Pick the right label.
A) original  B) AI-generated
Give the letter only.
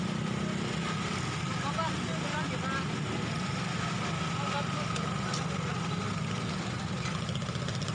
A